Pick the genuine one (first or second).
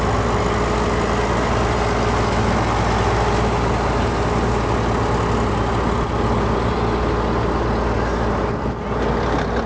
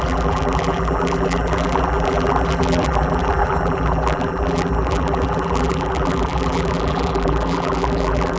first